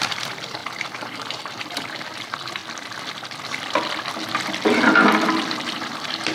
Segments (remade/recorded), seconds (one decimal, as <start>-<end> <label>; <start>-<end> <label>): 0.0-2.6 remade; 2.6-5.5 recorded; 5.5-6.3 remade